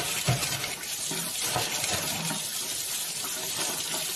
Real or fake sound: real